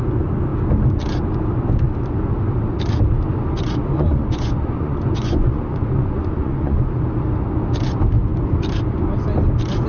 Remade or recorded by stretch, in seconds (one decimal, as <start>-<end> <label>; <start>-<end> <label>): 0.0-3.9 recorded; 3.9-6.8 remade; 6.8-9.9 recorded